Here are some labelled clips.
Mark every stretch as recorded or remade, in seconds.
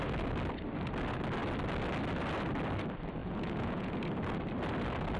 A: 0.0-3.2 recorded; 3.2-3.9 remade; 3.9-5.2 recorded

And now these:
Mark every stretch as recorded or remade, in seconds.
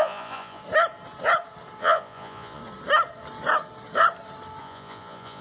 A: 0.0-0.6 remade; 0.6-1.8 recorded; 1.8-2.6 remade; 2.6-4.6 recorded; 4.6-5.4 remade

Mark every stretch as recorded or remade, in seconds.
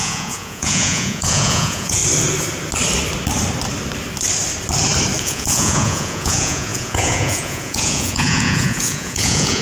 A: 0.0-2.0 remade; 2.0-5.2 recorded; 5.2-9.6 remade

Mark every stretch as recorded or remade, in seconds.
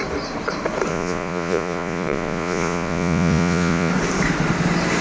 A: 0.0-0.9 recorded; 0.9-3.9 remade; 3.9-5.0 recorded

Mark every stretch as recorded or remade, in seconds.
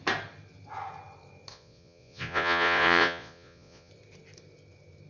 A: 0.0-1.5 recorded; 1.5-3.9 remade; 3.9-5.1 recorded